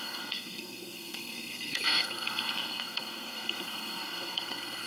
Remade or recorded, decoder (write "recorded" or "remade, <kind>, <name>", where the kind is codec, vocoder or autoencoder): remade, codec, SNAC